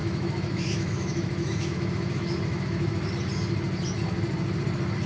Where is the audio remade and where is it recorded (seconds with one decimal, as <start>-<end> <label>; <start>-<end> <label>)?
0.0-3.1 remade; 3.1-5.1 recorded